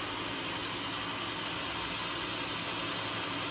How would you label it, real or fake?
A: real